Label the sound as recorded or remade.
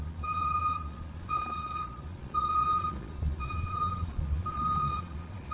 remade